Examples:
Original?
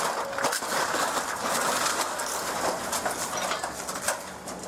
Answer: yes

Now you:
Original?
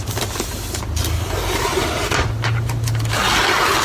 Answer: yes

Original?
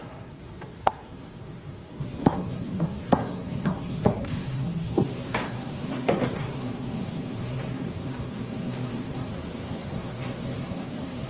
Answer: no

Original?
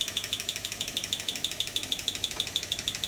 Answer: no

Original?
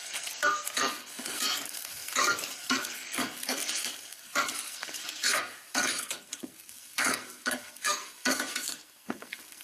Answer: no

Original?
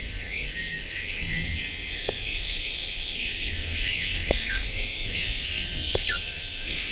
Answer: no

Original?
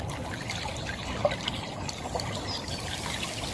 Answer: yes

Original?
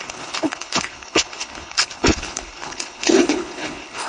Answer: no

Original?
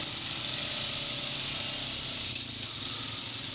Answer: yes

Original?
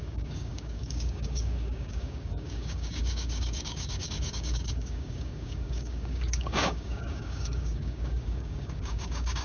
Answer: no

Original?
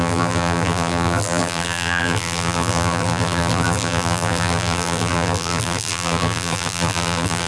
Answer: no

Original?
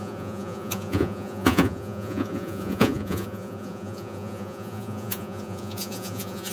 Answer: no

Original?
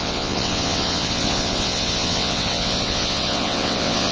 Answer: no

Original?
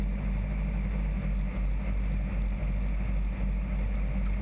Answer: yes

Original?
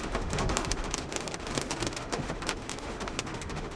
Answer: no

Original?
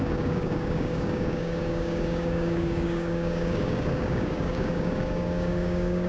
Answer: no